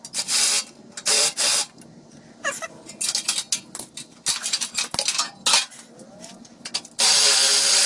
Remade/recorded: recorded